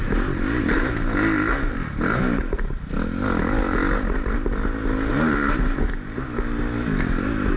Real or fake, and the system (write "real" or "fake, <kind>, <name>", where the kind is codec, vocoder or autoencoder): real